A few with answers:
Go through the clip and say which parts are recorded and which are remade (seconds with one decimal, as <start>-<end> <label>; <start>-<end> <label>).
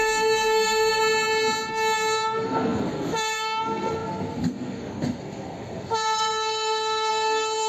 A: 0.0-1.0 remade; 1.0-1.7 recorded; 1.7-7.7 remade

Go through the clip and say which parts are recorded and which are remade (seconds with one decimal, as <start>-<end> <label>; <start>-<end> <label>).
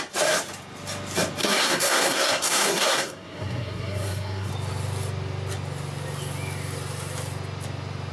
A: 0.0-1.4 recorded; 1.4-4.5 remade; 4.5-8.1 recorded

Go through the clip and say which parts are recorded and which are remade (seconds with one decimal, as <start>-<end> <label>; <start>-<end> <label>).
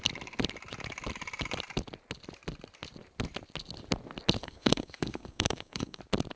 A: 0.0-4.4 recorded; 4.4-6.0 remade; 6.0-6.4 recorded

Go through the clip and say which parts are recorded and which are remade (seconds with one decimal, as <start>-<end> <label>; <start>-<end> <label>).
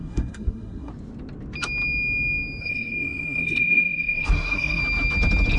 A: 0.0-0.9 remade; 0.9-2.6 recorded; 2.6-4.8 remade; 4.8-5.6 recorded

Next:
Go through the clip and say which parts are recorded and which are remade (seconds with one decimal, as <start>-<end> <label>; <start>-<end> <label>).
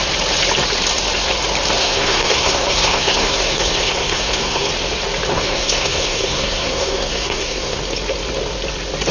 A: 0.0-1.8 recorded; 1.8-4.7 remade; 4.7-5.3 recorded; 5.3-7.8 remade; 7.8-9.1 recorded